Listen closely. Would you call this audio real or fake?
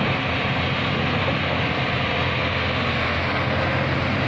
real